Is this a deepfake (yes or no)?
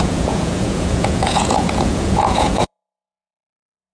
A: yes